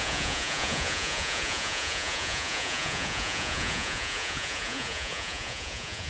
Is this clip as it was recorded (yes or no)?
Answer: no